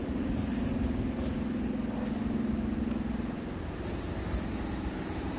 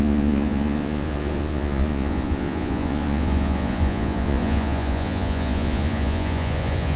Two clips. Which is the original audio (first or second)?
first